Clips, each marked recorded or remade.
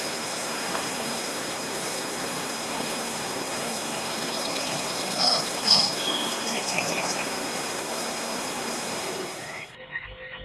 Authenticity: remade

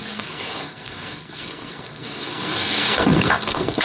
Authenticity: remade